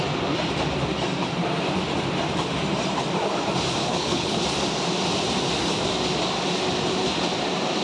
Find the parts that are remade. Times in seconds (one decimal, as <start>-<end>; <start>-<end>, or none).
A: 3.8-4.4